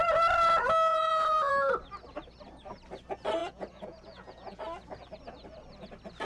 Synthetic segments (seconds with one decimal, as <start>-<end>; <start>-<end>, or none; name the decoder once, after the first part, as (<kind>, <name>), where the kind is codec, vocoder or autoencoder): 0.9-1.5 (vocoder, Vocos); 3.4-4.6